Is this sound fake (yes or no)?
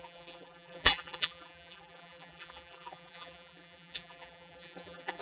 yes